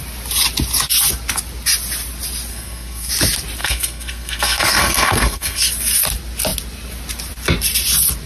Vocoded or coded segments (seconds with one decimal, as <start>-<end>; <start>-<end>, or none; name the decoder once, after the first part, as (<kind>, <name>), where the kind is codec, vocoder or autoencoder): 2.5-3.1 (codec, SNAC); 3.6-5.7